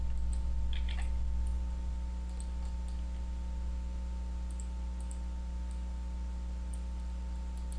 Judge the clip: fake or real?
real